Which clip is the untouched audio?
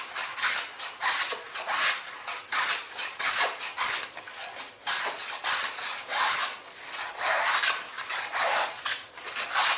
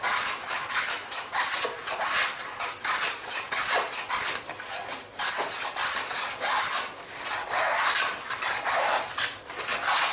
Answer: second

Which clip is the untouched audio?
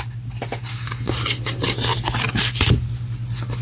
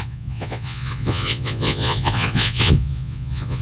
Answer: first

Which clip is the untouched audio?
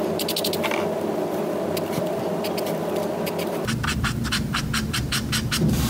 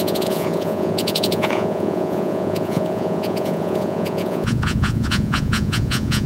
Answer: first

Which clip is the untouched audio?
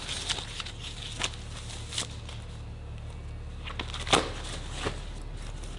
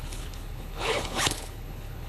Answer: first